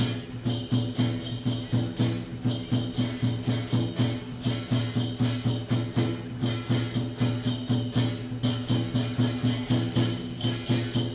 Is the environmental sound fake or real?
real